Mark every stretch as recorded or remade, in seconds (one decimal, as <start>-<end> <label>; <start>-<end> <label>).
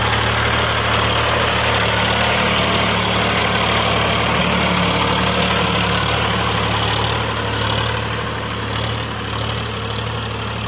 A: 0.0-10.7 recorded